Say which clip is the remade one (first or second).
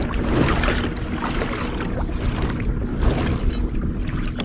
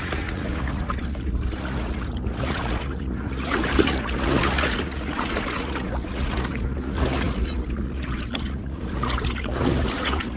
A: second